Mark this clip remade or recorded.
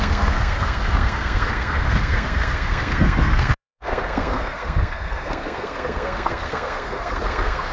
remade